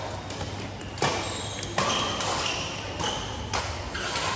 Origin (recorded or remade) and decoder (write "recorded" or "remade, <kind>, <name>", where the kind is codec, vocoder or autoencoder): recorded